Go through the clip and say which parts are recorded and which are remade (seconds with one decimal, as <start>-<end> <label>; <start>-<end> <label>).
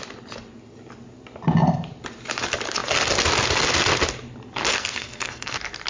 0.0-4.7 recorded; 4.7-5.5 remade; 5.5-5.9 recorded